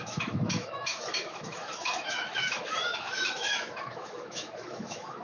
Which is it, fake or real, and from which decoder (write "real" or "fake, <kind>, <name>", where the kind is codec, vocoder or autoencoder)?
fake, autoencoder, DAC-VAE